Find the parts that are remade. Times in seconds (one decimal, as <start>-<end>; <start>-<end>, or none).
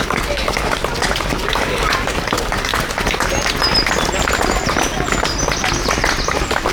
0.0-0.8; 1.5-2.7